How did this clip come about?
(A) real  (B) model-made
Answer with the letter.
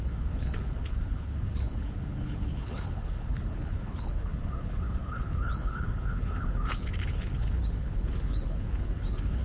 B